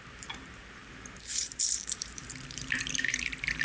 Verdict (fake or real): fake